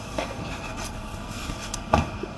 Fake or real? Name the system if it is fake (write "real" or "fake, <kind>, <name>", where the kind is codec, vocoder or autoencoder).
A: fake, codec, SNAC